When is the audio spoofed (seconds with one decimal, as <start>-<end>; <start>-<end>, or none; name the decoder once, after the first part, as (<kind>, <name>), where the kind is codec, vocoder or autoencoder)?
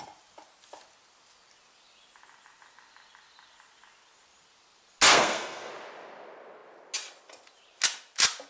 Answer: 5.1-5.7 (codec, SNAC)